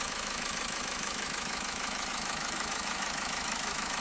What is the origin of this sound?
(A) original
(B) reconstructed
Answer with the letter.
B